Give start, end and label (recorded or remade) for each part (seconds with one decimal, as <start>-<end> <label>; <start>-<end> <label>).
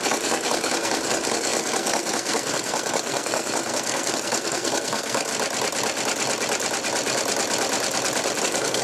0.0-5.3 remade; 5.3-8.4 recorded; 8.4-8.8 remade